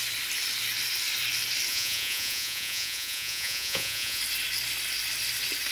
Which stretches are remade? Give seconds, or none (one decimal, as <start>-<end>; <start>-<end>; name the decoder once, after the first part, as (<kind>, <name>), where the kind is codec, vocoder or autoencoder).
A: 1.7-4.2 (vocoder, Vocos)